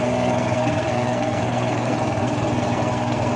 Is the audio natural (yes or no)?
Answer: no